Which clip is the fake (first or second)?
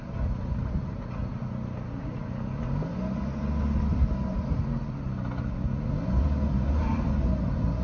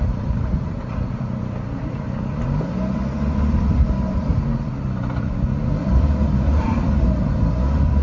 second